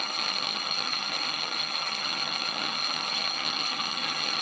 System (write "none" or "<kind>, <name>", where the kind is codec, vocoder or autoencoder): vocoder, HiFi-GAN